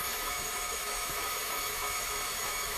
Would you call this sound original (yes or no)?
no